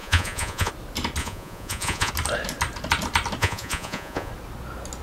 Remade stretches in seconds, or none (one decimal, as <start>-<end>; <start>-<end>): 0.0-0.7; 1.2-2.1; 3.4-4.3